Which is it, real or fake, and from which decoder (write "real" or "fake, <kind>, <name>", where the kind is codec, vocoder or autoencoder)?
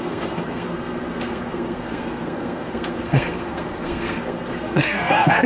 fake, codec, SNAC